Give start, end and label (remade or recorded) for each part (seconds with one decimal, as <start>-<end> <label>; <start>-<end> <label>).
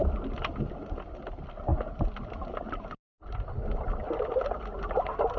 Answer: 0.0-5.4 recorded